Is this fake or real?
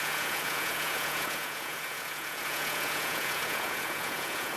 fake